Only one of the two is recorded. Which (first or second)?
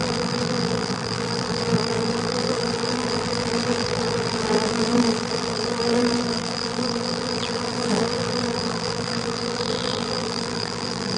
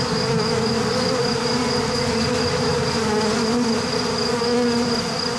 second